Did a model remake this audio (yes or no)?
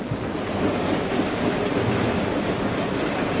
no